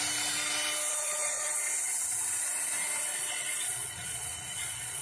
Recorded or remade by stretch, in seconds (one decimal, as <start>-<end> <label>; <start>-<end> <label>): 0.0-0.9 recorded; 0.9-1.6 remade; 1.6-3.1 recorded; 3.1-5.0 remade